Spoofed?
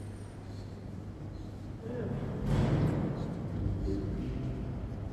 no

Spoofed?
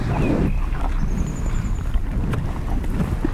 no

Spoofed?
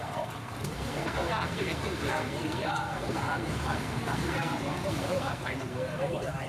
yes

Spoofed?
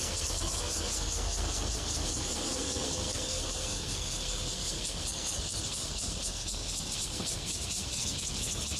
yes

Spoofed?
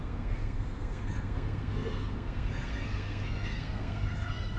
yes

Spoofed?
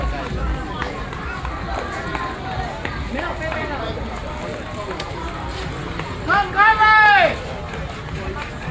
no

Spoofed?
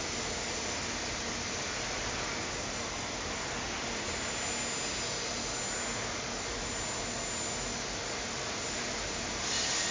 no